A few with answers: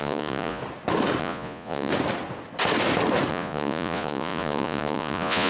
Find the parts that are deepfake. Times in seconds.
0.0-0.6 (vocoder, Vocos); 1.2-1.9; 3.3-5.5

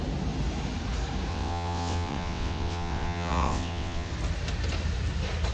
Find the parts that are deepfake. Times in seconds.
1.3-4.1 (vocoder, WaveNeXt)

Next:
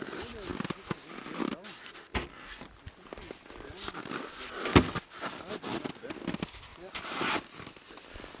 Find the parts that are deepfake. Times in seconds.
6.7-7.5 (vocoder, BigVGAN v2)